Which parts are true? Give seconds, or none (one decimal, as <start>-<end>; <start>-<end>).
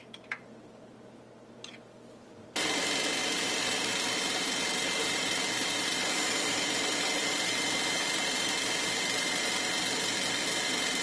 0.9-3.2; 3.9-5.0; 9.4-11.0